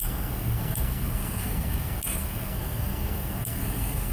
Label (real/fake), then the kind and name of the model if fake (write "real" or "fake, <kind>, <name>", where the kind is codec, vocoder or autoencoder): fake, codec, SNAC